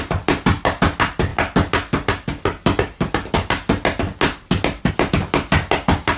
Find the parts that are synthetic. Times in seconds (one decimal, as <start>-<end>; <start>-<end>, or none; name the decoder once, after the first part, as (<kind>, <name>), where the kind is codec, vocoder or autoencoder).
none